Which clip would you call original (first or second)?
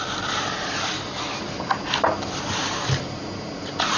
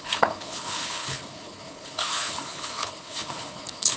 first